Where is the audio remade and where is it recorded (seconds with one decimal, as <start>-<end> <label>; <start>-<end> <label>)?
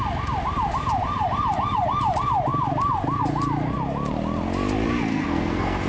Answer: 0.0-5.1 recorded; 5.1-5.9 remade